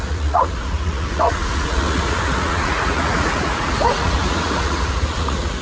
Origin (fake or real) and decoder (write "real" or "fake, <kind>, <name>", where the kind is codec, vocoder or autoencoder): fake, vocoder, Vocos